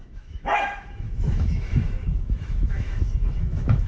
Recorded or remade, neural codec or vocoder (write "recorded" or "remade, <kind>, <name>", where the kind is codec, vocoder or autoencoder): remade, autoencoder, DAC-VAE